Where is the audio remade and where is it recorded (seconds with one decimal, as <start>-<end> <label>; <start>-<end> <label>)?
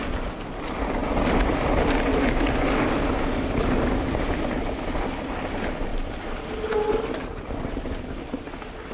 0.0-8.9 recorded